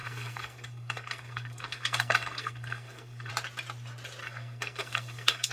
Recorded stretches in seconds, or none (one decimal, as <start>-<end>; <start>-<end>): 3.3-4.2